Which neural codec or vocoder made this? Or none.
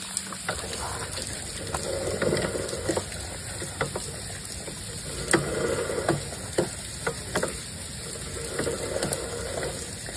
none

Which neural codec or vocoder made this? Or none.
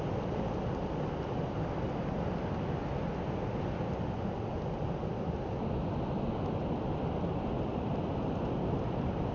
none